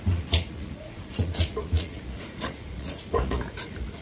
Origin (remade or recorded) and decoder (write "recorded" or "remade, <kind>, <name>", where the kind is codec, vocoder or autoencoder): remade, vocoder, Vocos